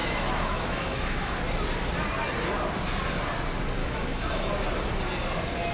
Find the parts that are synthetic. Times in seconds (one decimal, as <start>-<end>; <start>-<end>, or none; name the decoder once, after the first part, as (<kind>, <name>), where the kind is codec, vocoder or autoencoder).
0.0-1.4 (autoencoder, DAC-VAE); 3.8-4.5